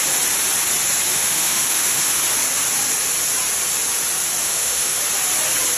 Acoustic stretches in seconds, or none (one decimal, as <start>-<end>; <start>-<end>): 0.0-1.1; 2.2-4.4; 5.0-5.8